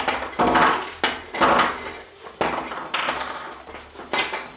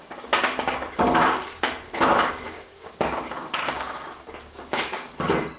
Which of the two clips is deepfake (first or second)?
second